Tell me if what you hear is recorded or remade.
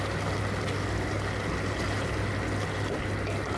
recorded